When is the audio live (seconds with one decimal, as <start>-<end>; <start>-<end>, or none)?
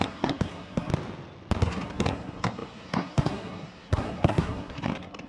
0.9-1.6